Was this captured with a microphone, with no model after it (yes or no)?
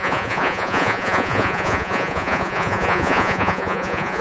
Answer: no